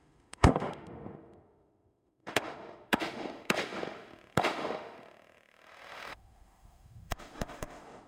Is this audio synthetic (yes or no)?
yes